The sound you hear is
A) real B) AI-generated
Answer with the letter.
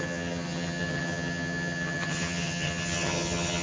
B